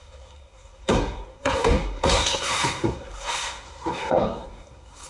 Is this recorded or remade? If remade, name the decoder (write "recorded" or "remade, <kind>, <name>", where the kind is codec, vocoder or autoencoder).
remade, codec, SNAC